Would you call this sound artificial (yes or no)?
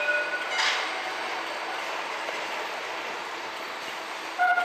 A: no